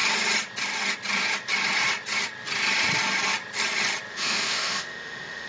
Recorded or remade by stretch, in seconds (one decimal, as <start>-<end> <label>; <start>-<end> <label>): 0.0-4.1 recorded; 4.1-5.5 remade